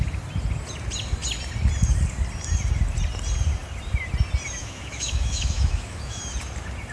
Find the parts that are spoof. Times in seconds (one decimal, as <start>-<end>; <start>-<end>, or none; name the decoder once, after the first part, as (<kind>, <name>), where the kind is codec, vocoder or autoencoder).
4.6-6.2 (autoencoder, DAC-VAE)

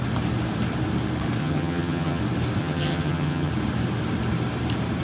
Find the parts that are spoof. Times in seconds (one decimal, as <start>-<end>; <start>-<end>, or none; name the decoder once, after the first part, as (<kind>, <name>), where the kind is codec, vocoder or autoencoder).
1.4-2.2 (vocoder, HiFi-GAN); 2.6-3.5